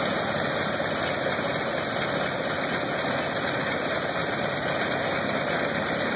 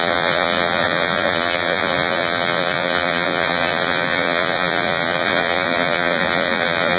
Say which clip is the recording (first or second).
first